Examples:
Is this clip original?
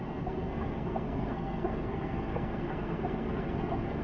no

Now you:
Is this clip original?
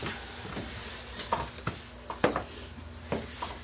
yes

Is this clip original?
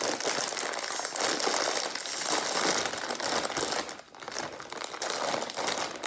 yes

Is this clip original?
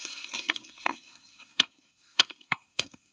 no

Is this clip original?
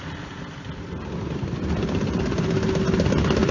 yes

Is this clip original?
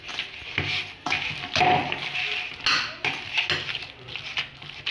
yes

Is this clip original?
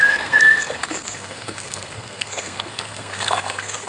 no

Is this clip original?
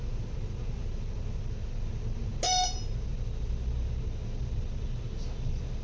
yes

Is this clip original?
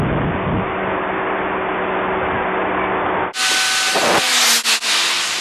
yes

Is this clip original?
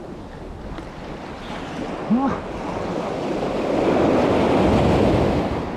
yes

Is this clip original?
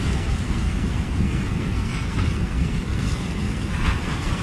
no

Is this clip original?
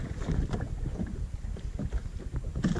yes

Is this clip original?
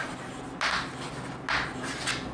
yes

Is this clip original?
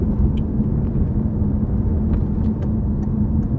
yes